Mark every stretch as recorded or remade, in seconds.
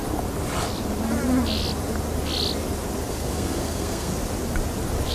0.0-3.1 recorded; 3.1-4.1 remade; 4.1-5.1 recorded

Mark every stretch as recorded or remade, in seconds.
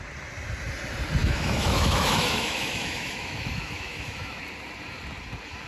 0.0-1.2 recorded; 1.2-4.4 remade; 4.4-5.7 recorded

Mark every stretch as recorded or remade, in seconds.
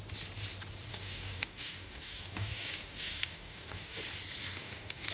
0.0-0.9 recorded; 0.9-4.0 remade; 4.0-4.4 recorded; 4.4-5.1 remade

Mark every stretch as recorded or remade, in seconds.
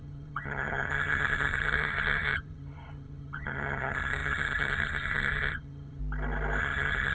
0.0-6.0 remade; 6.0-6.6 recorded; 6.6-7.1 remade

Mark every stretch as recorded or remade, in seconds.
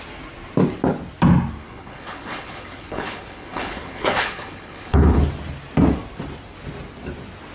0.0-1.6 recorded; 1.6-5.2 remade; 5.2-7.5 recorded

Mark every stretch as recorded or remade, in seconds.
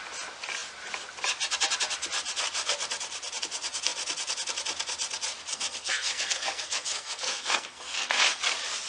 0.0-5.5 recorded; 5.5-8.4 remade; 8.4-8.9 recorded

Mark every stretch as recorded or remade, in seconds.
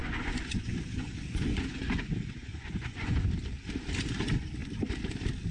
0.0-3.3 remade; 3.3-5.5 recorded